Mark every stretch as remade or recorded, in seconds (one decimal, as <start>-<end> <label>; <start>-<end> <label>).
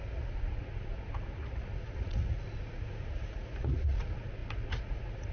0.0-5.3 remade